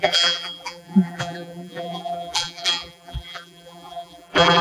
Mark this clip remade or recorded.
remade